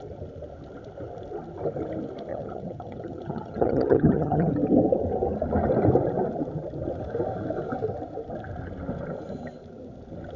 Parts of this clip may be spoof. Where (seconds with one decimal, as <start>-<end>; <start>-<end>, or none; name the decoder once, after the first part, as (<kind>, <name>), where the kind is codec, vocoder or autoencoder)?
2.3-4.5 (vocoder, HiFi-GAN)